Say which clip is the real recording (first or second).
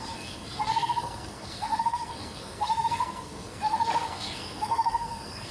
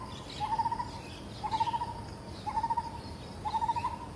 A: second